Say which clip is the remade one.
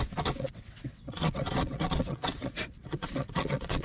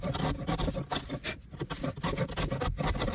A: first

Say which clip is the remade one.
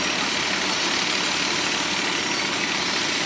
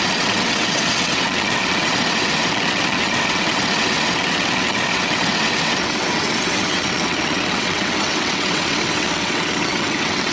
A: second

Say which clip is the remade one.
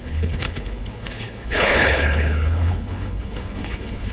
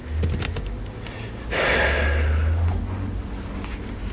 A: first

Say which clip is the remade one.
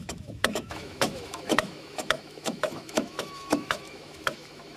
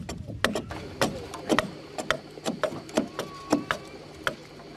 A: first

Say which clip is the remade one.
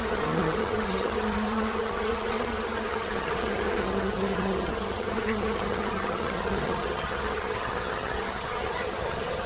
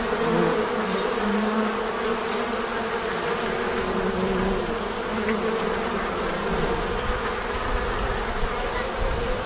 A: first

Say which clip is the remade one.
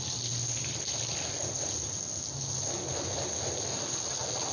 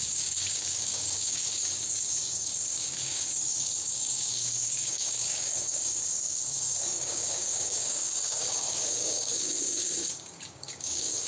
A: second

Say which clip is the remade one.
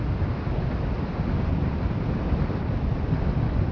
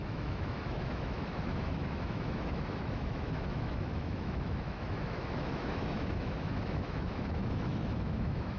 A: second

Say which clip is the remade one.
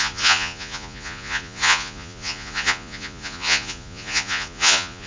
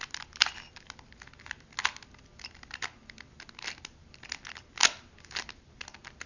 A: first